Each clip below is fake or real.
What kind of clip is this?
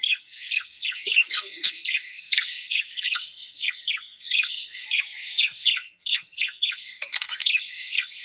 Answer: fake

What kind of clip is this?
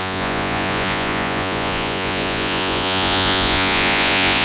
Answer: fake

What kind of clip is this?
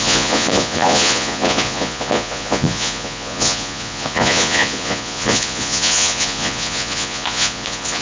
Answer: fake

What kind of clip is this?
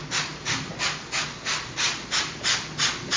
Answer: real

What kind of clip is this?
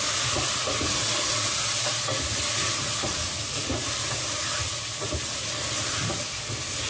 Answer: real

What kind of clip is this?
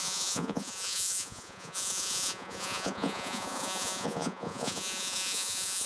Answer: fake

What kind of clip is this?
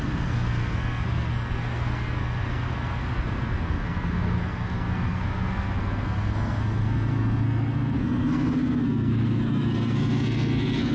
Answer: fake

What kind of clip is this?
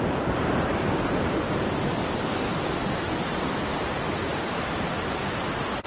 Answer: real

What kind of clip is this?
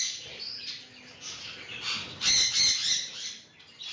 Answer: real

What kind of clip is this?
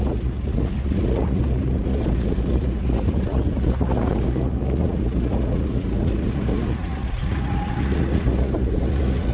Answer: fake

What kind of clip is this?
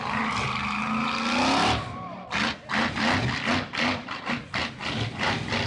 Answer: real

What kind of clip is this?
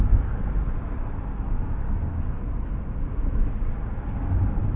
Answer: real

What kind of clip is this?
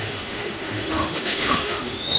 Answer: fake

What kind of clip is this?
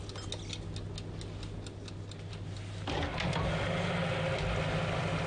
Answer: real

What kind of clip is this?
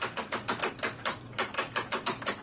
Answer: real